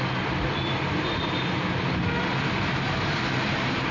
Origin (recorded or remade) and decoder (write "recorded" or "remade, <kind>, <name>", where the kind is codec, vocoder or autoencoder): recorded